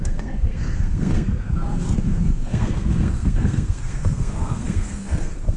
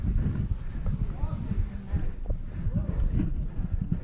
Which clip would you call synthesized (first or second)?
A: first